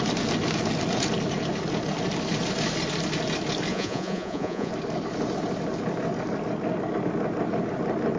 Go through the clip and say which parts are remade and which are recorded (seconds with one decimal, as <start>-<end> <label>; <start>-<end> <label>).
0.0-3.7 recorded; 3.7-4.7 remade; 4.7-8.2 recorded